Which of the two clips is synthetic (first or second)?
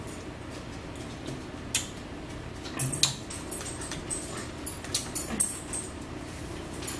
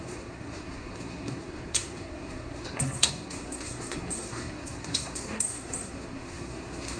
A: second